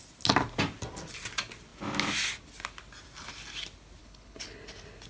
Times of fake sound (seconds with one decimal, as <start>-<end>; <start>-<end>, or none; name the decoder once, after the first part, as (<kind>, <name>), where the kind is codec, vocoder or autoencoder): 4.0-4.6 (codec, HILCodec)